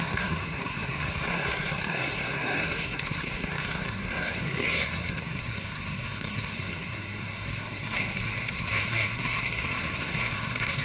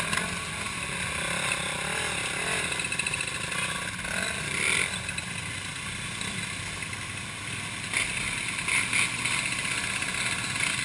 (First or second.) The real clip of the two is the second